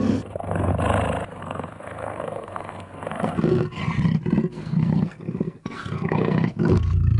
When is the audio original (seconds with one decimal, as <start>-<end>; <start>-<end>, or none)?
0.7-1.4; 3.8-4.4